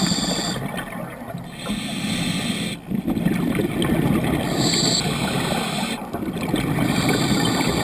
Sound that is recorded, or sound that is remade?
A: recorded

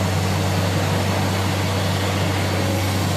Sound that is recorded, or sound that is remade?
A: recorded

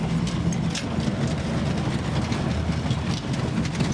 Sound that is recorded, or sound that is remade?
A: recorded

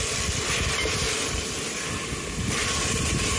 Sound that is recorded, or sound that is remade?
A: recorded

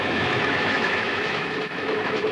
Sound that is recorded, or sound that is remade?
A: remade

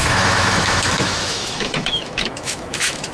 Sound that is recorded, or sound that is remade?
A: remade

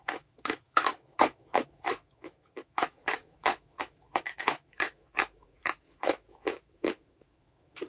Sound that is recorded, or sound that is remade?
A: remade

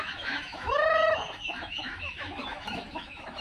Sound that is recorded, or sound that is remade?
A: remade